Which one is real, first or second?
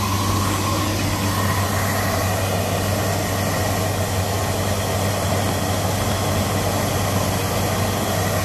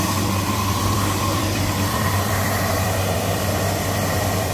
first